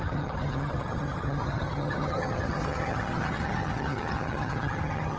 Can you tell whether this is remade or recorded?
remade